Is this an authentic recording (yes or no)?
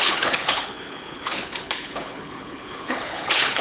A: no